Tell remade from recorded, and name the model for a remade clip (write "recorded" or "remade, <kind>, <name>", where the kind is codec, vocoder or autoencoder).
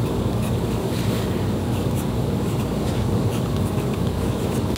remade, codec, DAC